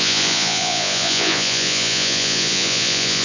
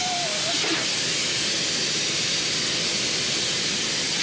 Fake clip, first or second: first